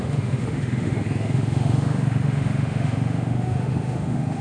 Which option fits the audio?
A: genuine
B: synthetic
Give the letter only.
B